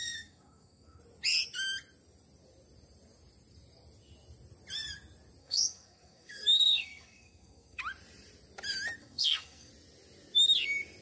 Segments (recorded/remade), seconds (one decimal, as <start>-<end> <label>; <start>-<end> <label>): 0.0-1.0 remade; 1.0-5.4 recorded; 5.4-7.8 remade; 7.8-9.0 recorded; 9.0-9.7 remade; 9.7-11.0 recorded